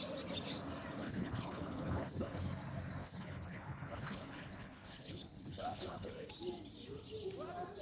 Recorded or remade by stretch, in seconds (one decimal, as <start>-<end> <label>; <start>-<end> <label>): 0.0-1.0 recorded; 1.0-2.4 remade; 2.4-3.0 recorded; 3.0-6.3 remade; 6.3-7.8 recorded